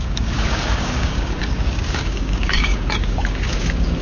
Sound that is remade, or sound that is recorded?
remade